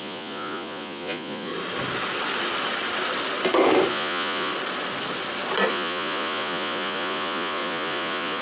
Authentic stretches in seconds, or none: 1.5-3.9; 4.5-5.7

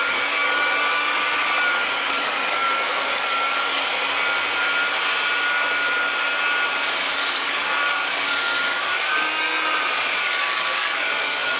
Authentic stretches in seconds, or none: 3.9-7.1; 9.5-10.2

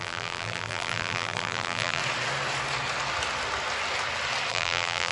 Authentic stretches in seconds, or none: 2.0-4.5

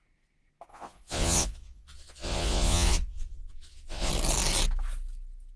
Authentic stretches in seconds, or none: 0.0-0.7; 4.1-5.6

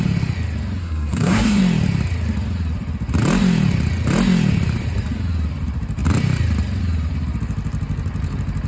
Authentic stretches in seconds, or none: 0.0-0.8; 1.6-8.7

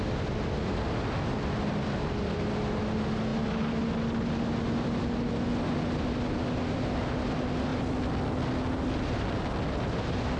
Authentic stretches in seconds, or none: 0.0-3.3; 4.4-10.4

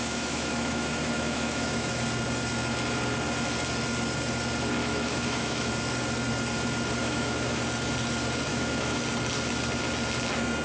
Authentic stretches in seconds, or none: 2.0-4.8; 5.7-7.0; 7.6-8.5; 9.0-10.6